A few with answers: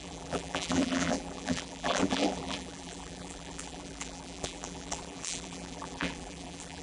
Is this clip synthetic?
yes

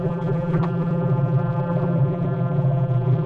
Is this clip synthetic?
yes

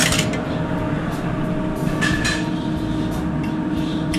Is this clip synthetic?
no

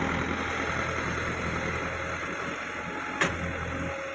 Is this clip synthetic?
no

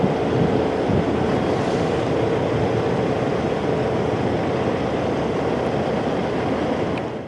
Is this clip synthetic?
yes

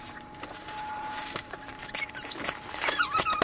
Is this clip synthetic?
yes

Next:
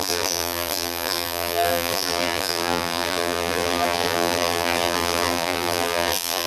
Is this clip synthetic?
yes